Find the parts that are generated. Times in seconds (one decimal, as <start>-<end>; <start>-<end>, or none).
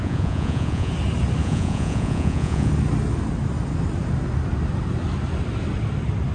0.0-0.9; 1.4-2.7